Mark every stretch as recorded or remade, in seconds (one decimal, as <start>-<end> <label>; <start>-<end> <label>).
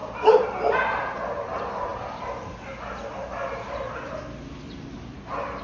0.0-0.5 remade; 0.5-5.6 recorded